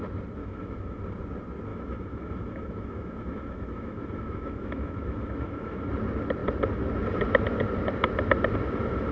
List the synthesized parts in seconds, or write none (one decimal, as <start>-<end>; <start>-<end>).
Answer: 0.4-1.0; 1.7-5.9